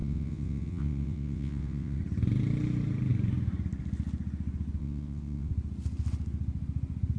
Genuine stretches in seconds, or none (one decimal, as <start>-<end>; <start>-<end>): 2.0-4.8; 5.5-7.2

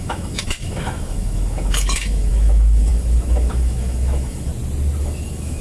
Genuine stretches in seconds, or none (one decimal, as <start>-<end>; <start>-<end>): 4.5-5.0

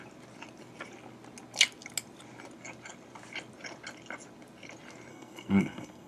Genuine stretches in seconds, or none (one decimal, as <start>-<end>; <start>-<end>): 0.0-5.1